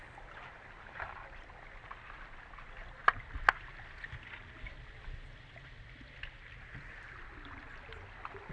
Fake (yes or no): no